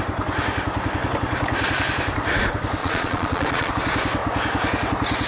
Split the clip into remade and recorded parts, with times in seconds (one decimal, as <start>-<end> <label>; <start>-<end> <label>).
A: 0.0-2.8 recorded; 2.8-3.7 remade; 3.7-5.3 recorded

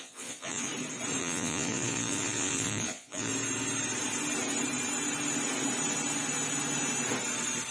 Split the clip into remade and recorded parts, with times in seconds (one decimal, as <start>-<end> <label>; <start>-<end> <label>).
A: 0.0-0.7 remade; 0.7-1.2 recorded; 1.2-3.3 remade; 3.3-7.7 recorded

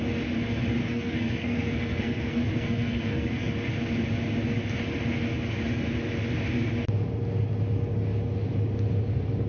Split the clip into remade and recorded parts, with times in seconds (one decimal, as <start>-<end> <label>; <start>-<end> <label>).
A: 0.0-0.8 recorded; 0.8-3.5 remade; 3.5-9.5 recorded

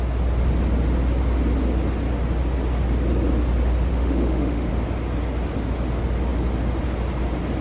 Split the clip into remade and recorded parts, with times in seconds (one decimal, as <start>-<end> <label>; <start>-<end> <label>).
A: 0.0-3.9 recorded; 3.9-4.7 remade; 4.7-7.6 recorded